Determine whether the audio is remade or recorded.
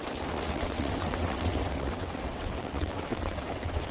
remade